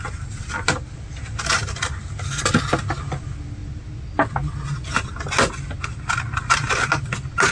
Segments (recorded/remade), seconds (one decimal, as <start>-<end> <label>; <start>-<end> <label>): 0.0-7.5 recorded